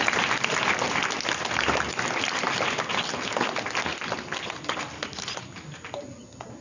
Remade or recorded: recorded